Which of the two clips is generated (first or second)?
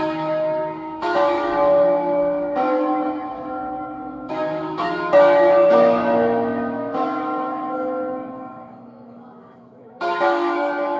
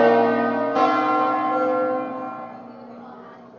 first